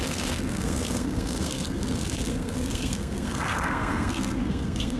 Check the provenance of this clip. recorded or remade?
remade